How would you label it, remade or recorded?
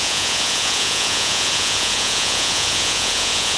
remade